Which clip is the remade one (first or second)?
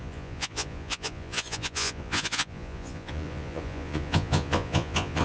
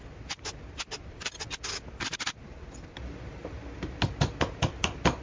first